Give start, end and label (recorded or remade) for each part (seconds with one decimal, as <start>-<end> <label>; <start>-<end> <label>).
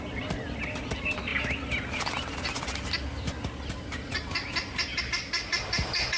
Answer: 0.0-6.2 recorded